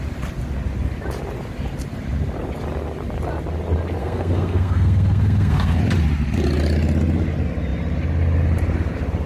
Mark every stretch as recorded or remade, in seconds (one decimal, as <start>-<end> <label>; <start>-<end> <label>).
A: 0.0-4.0 recorded; 4.0-5.8 remade; 5.8-9.3 recorded